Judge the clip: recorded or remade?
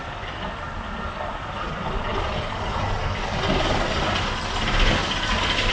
recorded